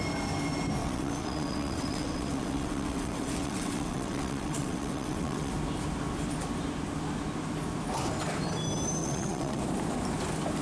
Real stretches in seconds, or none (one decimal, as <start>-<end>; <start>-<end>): 0.0-0.8; 5.5-9.0; 9.6-10.6